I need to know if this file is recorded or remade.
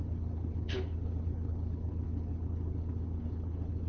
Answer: remade